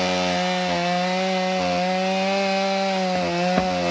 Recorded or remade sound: recorded